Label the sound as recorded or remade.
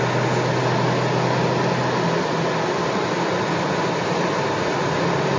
recorded